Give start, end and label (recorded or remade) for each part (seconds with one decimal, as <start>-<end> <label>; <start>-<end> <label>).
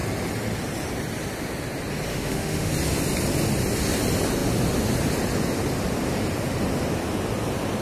0.0-2.1 recorded; 2.1-2.7 remade; 2.7-7.8 recorded